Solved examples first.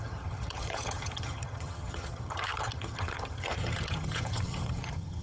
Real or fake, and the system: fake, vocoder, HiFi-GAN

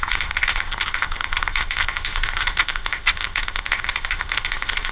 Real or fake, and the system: fake, codec, ZipCodec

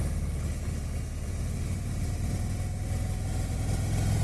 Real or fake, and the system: real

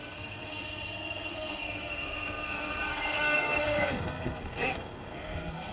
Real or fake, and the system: fake, codec, SNAC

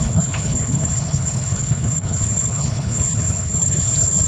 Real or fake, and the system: fake, codec, HILCodec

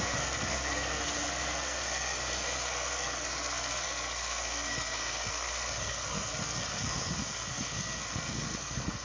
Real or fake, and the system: fake, codec, SNAC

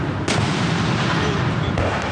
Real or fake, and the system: real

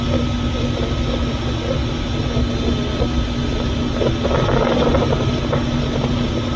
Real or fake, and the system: real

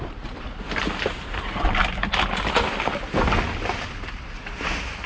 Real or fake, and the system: real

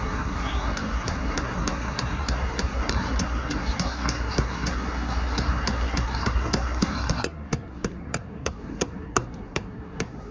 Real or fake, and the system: fake, codec, SNAC